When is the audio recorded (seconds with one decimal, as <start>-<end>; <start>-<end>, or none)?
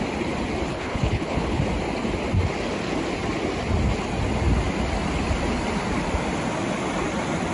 0.0-0.7; 1.6-7.5